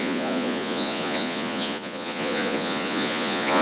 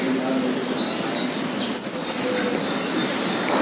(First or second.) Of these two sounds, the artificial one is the first